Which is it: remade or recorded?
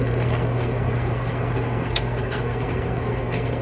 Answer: remade